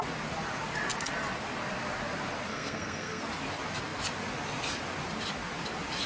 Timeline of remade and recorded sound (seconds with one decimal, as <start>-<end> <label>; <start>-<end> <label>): 0.0-2.5 recorded; 2.5-3.2 remade; 3.2-6.1 recorded

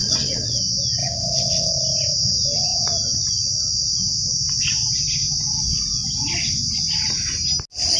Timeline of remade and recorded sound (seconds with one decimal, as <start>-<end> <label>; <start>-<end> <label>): 0.0-0.6 remade; 0.6-1.0 recorded; 1.0-1.7 remade; 1.7-8.0 recorded

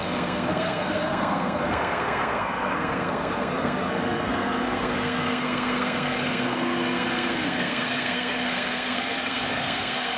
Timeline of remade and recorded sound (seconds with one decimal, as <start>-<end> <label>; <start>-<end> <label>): 0.0-10.2 remade

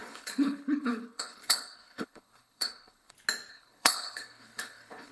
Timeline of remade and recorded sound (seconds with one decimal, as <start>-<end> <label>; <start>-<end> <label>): 0.0-3.1 remade; 3.1-3.5 recorded; 3.5-5.1 remade

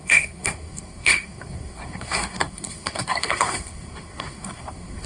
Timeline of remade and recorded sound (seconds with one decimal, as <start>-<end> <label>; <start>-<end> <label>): 0.0-5.1 remade

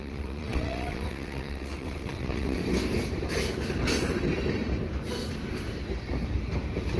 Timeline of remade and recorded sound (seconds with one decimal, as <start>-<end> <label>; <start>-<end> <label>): 0.0-2.6 remade; 2.6-7.0 recorded

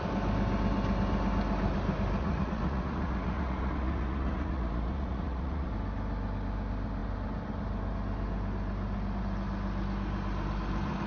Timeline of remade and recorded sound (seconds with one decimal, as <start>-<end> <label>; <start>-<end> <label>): 0.0-2.2 recorded; 2.2-5.7 remade; 5.7-11.1 recorded